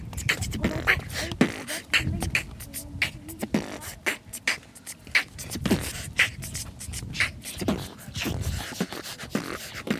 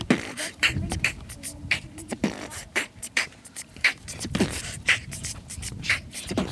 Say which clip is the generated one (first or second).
second